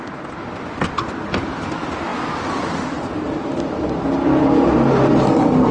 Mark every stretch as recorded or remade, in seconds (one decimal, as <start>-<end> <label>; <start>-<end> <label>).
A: 0.0-5.7 recorded